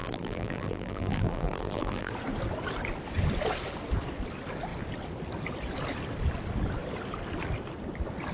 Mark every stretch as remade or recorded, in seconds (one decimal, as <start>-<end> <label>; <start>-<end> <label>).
0.0-2.1 remade; 2.1-8.3 recorded